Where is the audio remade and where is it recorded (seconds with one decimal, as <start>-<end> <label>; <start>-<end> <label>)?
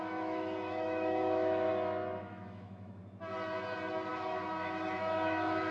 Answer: 0.0-1.7 remade; 1.7-2.2 recorded; 2.2-3.0 remade; 3.0-4.1 recorded; 4.1-5.7 remade